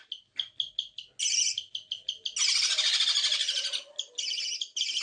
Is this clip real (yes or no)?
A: yes